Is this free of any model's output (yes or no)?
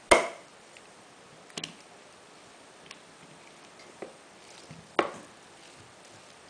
yes